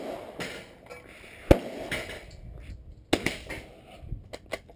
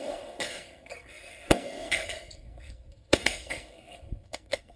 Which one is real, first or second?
first